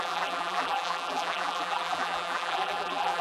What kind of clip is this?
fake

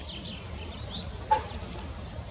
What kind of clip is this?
real